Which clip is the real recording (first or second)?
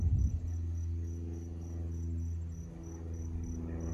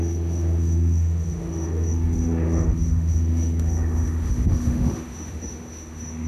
first